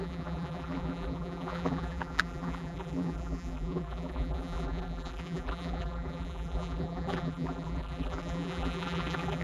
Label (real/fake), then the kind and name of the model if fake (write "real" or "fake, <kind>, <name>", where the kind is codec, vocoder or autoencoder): fake, vocoder, BigVGAN v2